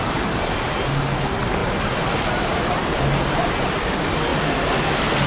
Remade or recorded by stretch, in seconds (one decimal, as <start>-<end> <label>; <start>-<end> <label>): 0.0-5.3 recorded